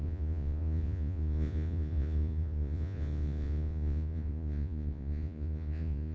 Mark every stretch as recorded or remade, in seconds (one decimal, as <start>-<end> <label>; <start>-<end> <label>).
0.0-6.1 remade